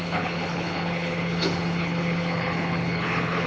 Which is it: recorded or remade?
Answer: remade